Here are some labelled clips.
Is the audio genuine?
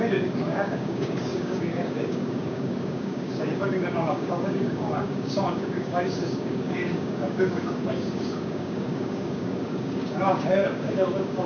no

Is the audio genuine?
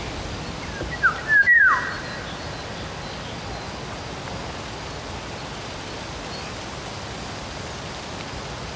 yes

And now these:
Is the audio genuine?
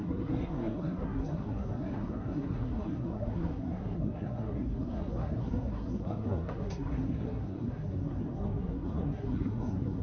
no